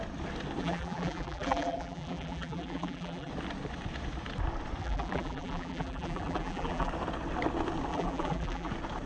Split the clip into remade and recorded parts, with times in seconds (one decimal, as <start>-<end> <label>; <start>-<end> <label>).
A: 0.0-0.6 recorded; 0.6-3.3 remade; 3.3-4.8 recorded; 4.8-6.9 remade; 6.9-7.9 recorded; 7.9-8.7 remade; 8.7-9.1 recorded